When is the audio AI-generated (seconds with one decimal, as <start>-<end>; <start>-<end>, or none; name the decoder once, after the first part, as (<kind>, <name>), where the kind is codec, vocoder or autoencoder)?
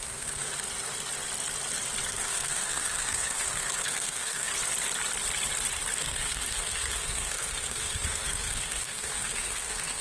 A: 0.0-0.5 (codec, SNAC); 2.1-4.5; 6.0-10.0